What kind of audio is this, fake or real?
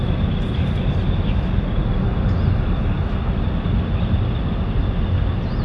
real